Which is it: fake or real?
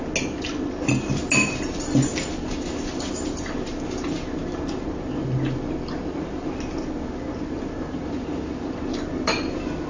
real